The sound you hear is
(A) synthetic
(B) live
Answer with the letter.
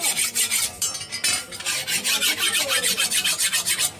B